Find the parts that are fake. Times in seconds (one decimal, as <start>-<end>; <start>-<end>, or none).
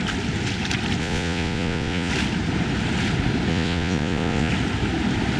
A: 1.0-2.1; 3.5-4.5